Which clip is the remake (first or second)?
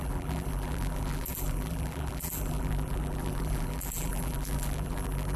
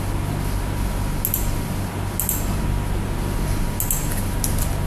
first